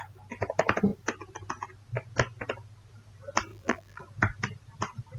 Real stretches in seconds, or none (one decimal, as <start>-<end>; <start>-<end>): 0.0-3.5; 4.0-5.2